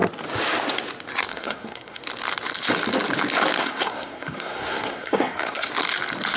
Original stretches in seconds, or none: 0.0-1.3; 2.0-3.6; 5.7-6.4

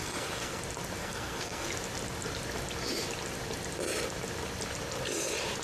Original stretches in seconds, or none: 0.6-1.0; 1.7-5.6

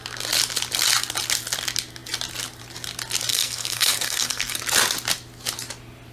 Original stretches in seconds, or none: 0.0-3.3; 4.6-6.1